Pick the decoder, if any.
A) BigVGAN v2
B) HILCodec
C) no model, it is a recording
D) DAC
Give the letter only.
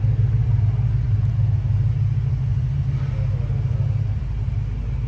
C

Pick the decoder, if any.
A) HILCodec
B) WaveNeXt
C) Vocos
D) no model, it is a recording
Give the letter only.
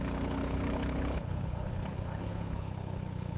A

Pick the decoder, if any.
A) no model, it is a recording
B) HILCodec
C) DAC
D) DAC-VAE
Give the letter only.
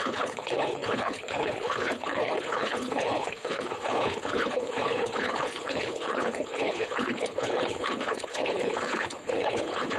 B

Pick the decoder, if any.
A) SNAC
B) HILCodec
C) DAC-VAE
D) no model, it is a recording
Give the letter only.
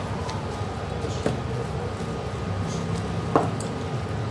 D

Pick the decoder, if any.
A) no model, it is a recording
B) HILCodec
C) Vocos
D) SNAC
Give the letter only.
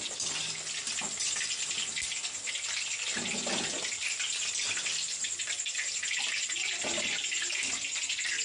A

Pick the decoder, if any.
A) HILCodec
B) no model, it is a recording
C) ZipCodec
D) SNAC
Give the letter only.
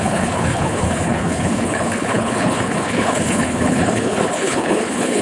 A